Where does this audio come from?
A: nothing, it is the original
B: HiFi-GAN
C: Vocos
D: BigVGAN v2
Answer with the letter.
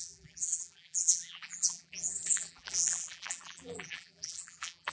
D